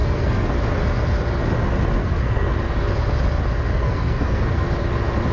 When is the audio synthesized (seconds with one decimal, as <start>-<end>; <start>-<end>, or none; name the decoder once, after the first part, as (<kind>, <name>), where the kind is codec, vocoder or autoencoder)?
0.0-0.5 (codec, SNAC); 2.0-2.5; 3.7-4.7